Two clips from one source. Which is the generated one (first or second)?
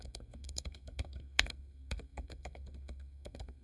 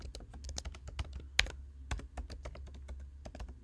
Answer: first